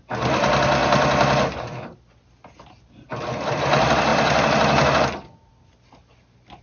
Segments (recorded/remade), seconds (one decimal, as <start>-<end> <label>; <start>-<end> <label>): 0.0-6.6 recorded